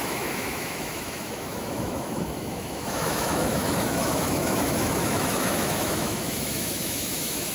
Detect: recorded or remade remade